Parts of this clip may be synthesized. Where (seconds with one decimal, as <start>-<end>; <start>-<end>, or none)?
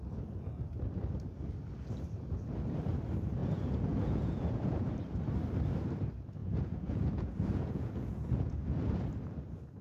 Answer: 3.4-4.9; 6.4-9.1